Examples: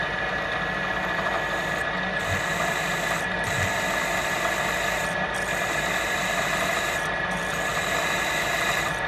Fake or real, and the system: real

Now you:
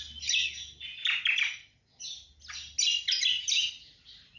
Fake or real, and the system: real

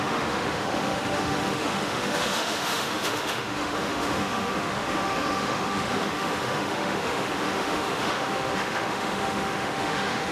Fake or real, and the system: fake, autoencoder, DAC-VAE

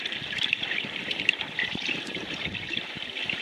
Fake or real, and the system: fake, vocoder, BigVGAN v2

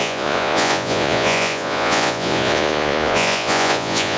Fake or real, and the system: fake, vocoder, Vocos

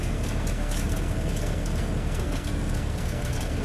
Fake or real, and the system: fake, codec, SNAC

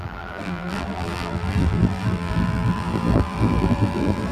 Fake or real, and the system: fake, vocoder, BigVGAN v2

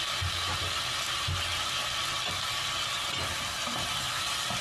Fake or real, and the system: real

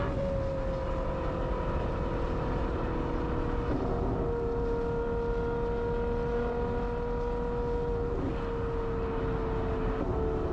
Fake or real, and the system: real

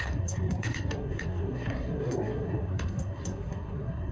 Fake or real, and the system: fake, codec, SNAC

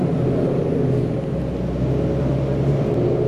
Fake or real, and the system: real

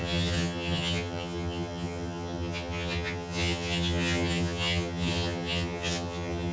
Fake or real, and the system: fake, vocoder, HiFi-GAN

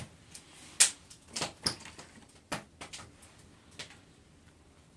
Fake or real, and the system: real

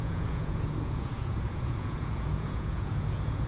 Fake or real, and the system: fake, vocoder, Vocos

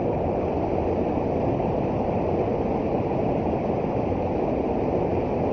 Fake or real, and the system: real